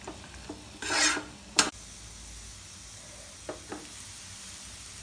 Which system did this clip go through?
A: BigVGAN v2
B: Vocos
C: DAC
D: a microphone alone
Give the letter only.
D